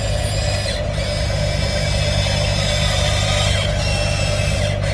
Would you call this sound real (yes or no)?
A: yes